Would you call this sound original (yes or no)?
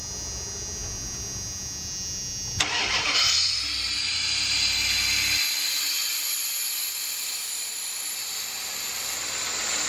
yes